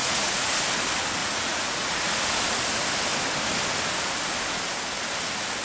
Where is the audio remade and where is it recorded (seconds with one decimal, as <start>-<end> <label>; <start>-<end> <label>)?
0.0-0.6 remade; 0.6-1.2 recorded; 1.2-2.1 remade; 2.1-5.6 recorded